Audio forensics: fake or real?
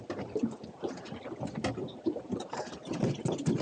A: real